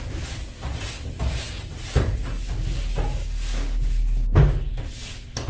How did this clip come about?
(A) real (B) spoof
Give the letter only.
A